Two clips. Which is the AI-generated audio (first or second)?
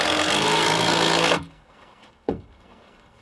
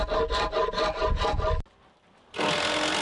first